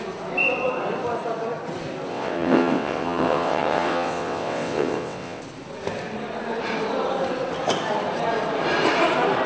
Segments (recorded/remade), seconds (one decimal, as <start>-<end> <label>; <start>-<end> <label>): 0.0-2.1 recorded; 2.1-5.4 remade; 5.4-9.5 recorded